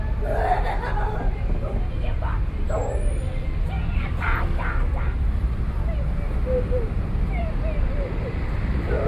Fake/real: fake